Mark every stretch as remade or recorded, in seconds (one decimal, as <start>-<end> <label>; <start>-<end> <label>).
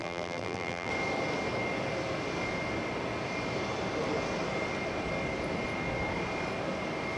0.0-0.9 remade; 0.9-7.2 recorded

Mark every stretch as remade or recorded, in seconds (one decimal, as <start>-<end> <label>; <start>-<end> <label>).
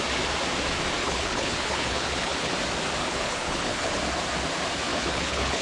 0.0-1.0 recorded; 1.0-2.5 remade; 2.5-3.0 recorded; 3.0-4.0 remade; 4.0-4.9 recorded; 4.9-5.6 remade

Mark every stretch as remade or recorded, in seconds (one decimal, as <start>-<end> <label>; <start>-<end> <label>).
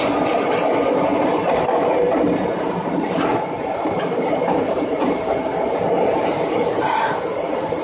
0.0-1.1 recorded; 1.1-5.0 remade; 5.0-7.8 recorded